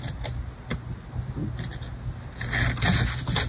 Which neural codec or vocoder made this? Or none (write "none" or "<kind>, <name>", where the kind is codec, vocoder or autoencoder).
none